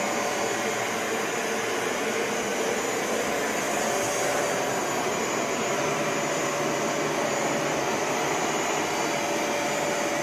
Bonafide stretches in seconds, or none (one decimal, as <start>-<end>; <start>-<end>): 0.0-10.2